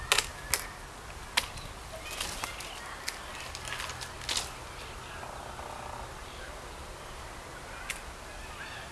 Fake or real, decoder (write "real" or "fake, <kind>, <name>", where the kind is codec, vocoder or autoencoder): real